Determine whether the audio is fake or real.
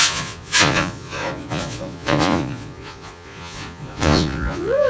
fake